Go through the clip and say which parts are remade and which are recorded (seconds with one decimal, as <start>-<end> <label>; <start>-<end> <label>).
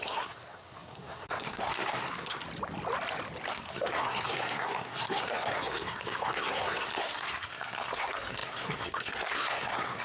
0.0-2.4 remade; 2.4-3.5 recorded; 3.5-10.0 remade